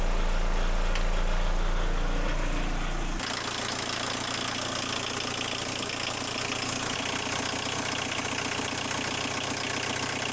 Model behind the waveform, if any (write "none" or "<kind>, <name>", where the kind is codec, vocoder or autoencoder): none